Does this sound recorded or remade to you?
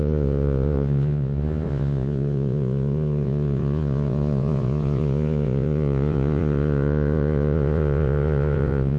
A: remade